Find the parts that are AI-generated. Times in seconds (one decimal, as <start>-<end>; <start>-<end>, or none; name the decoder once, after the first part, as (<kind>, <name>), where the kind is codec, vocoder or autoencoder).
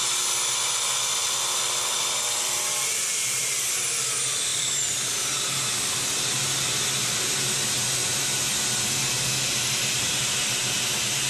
1.2-3.6 (vocoder, BigVGAN v2); 4.5-5.0